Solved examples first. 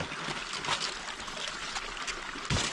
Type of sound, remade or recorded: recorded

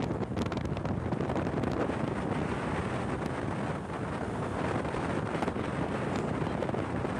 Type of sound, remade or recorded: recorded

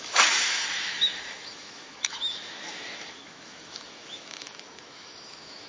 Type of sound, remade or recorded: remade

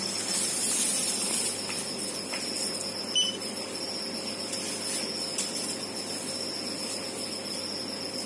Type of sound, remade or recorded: recorded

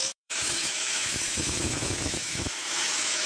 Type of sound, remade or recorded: remade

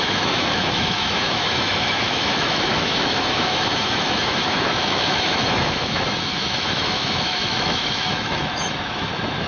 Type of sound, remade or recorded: remade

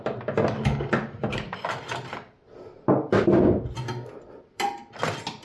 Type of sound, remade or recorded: recorded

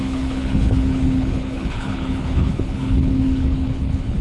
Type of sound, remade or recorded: remade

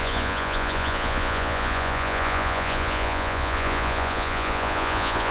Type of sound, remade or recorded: remade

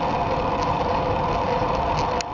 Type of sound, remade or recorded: recorded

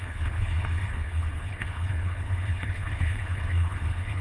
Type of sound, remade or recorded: remade